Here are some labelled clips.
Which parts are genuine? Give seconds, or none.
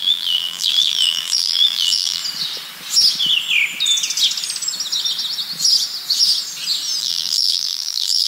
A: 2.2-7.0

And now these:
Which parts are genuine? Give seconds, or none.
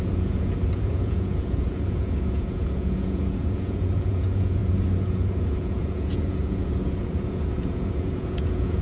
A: none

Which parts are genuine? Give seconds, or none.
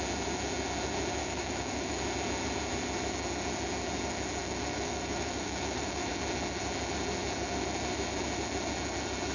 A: 0.0-1.2; 2.0-4.4; 6.1-9.3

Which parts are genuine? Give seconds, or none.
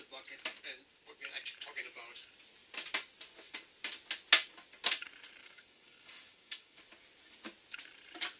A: 0.0-5.4; 6.8-8.4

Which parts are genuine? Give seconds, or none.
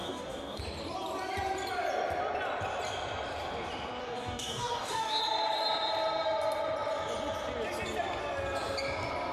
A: 0.6-4.0; 5.2-9.3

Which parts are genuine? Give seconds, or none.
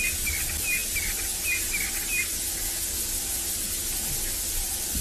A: 0.0-5.0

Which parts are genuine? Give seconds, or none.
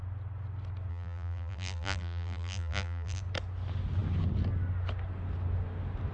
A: 0.0-0.9; 3.2-6.1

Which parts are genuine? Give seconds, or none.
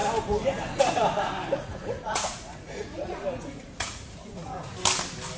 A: 0.0-1.4; 4.6-5.4